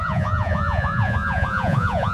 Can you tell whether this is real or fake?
fake